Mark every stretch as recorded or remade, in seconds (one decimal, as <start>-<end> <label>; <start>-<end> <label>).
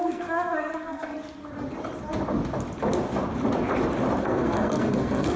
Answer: 0.0-1.1 remade; 1.1-4.2 recorded; 4.2-5.4 remade